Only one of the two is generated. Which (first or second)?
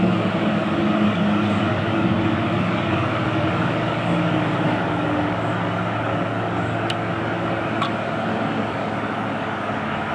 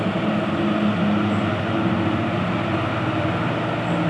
first